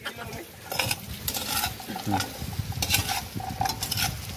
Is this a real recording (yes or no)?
yes